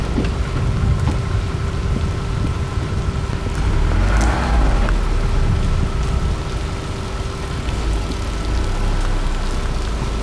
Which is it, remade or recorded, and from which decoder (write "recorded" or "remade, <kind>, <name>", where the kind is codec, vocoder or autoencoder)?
recorded